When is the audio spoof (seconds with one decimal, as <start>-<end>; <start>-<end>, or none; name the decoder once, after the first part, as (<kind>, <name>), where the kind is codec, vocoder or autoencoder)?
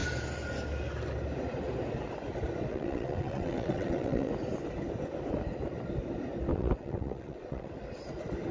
2.7-4.3 (vocoder, WaveNeXt); 6.5-7.7